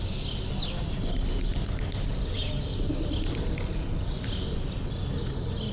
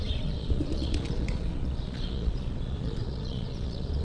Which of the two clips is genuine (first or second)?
first